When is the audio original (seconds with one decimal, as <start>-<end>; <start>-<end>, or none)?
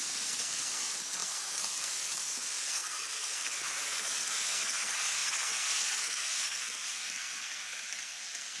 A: none